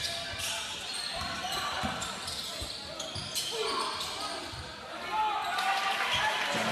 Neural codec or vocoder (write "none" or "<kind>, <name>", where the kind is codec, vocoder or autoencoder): none